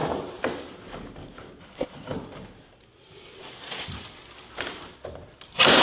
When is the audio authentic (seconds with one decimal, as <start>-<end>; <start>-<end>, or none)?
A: 0.0-1.6; 2.1-5.8